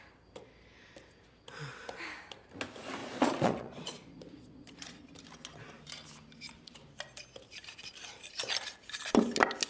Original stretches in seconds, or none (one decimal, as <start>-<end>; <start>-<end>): 0.0-3.0; 5.0-9.7

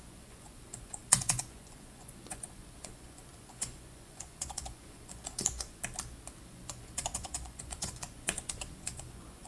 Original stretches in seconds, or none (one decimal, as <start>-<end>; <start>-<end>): 5.8-6.5

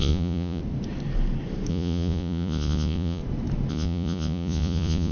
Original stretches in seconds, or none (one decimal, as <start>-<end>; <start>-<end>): 0.6-1.7; 3.2-3.7

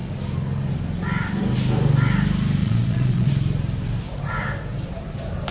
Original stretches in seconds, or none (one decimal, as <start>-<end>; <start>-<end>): 0.0-2.6; 3.3-5.5

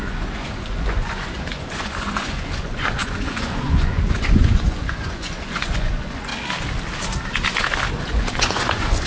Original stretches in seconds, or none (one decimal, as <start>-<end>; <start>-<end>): 6.3-7.9

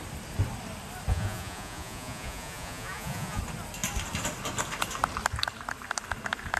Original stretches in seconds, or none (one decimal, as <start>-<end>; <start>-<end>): 0.0-1.1; 3.4-6.6